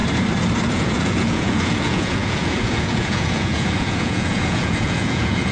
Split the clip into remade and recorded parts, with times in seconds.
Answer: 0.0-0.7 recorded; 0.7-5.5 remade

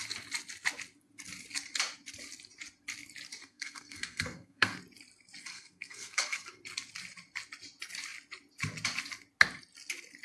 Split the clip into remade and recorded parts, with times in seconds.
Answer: 0.0-3.4 recorded; 3.4-4.8 remade; 4.8-5.5 recorded; 5.5-6.6 remade; 6.6-10.2 recorded

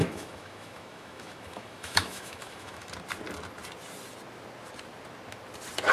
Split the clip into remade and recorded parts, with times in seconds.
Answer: 0.0-2.9 remade; 2.9-5.9 recorded

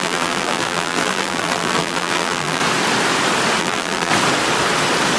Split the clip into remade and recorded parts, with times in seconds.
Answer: 0.0-2.6 remade; 2.6-3.6 recorded; 3.6-4.1 remade; 4.1-5.2 recorded

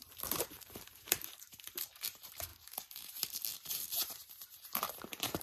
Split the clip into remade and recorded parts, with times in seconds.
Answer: 0.0-5.4 remade

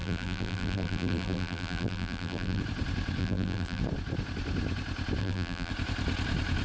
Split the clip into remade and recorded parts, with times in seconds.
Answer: 0.0-2.6 remade; 2.6-3.2 recorded; 3.2-3.8 remade; 3.8-5.2 recorded; 5.2-5.7 remade; 5.7-6.6 recorded